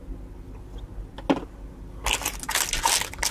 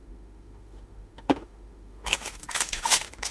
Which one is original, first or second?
first